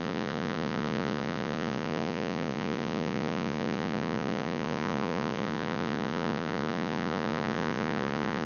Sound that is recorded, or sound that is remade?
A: remade